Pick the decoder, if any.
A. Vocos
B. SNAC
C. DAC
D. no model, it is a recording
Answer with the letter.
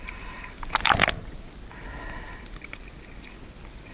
D